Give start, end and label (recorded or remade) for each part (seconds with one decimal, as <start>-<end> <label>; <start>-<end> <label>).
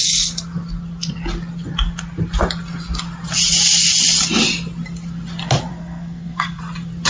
0.0-5.7 recorded; 5.7-6.6 remade; 6.6-7.1 recorded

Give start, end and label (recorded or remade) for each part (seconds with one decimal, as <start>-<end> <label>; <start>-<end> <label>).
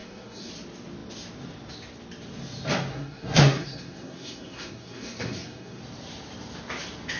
0.0-0.5 remade; 0.5-2.9 recorded; 2.9-5.8 remade; 5.8-7.2 recorded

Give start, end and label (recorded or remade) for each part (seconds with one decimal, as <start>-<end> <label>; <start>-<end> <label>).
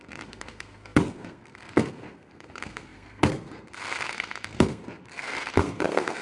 0.0-6.2 remade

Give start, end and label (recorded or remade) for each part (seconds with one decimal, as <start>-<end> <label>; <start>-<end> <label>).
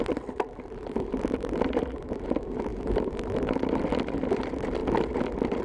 0.0-5.6 recorded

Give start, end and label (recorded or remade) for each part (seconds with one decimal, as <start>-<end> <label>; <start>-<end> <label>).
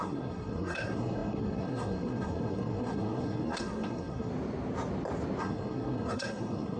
0.0-4.3 remade; 4.3-5.4 recorded; 5.4-6.8 remade